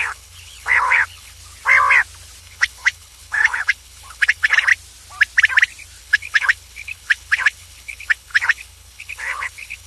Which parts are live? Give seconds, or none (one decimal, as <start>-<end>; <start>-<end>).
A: 1.4-2.4; 4.7-6.0